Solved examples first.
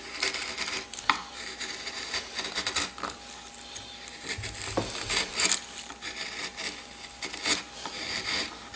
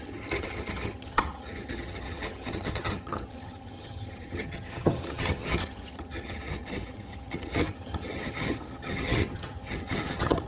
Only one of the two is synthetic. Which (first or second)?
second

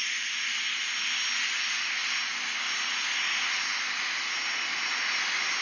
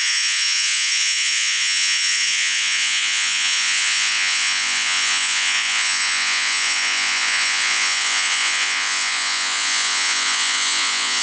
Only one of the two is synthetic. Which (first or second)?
second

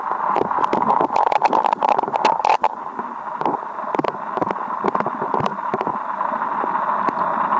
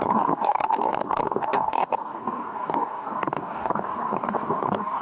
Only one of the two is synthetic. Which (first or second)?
second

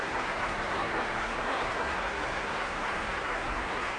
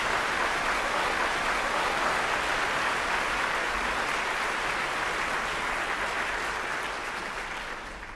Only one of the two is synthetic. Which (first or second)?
first